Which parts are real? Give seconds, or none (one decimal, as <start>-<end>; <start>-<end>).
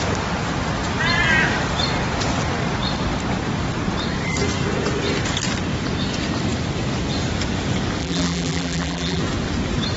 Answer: 0.0-8.0; 9.2-10.0